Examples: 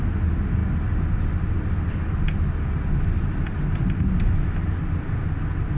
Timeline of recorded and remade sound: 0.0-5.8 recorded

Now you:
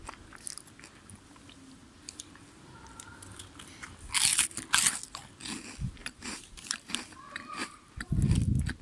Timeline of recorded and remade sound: 0.0-6.0 recorded; 6.0-6.9 remade; 6.9-7.6 recorded; 7.6-8.1 remade; 8.1-8.8 recorded

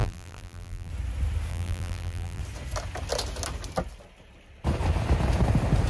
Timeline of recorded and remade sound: 0.0-0.9 remade; 0.9-1.5 recorded; 1.5-2.4 remade; 2.4-5.9 recorded

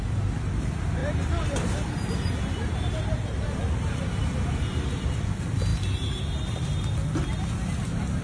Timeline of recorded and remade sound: 0.0-1.0 recorded; 1.0-4.0 remade; 4.0-5.7 recorded; 5.7-6.7 remade; 6.7-8.2 recorded

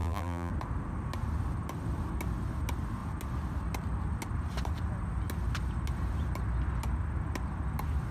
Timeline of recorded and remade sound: 0.0-0.5 remade; 0.5-8.1 recorded

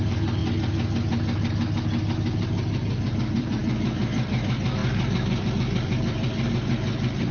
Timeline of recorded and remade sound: 0.0-0.4 remade; 0.4-3.1 recorded; 3.1-7.3 remade

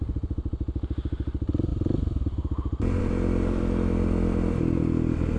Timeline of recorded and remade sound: 0.0-5.4 recorded

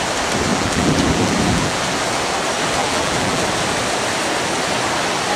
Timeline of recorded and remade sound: 0.0-0.5 recorded; 0.5-1.8 remade; 1.8-2.8 recorded; 2.8-3.4 remade; 3.4-5.4 recorded